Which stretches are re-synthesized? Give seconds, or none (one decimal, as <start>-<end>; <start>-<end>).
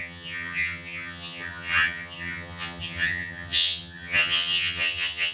0.0-5.3